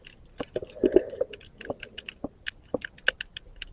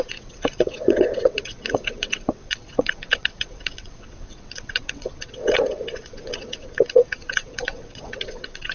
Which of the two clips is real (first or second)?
first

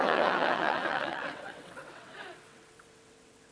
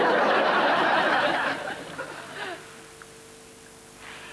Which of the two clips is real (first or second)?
second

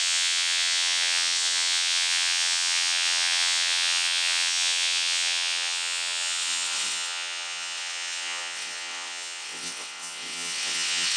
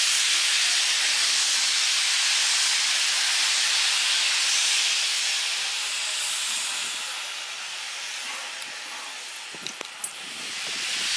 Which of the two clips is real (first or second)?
second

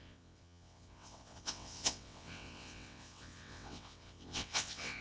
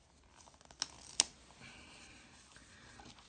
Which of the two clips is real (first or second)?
second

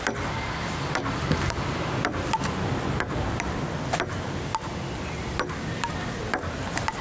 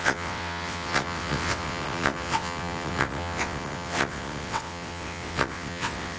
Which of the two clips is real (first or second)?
first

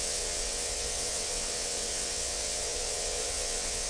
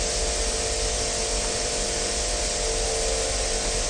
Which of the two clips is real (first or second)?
second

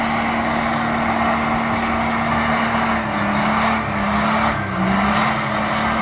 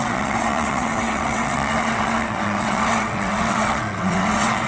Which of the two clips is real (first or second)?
first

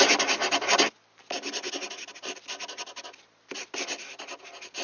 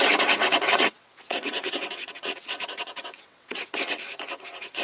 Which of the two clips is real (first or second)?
first